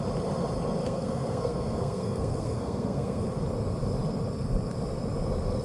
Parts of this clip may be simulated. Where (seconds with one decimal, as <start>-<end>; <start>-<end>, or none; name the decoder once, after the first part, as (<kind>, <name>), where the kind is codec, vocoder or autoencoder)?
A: 0.8-3.2 (codec, SNAC)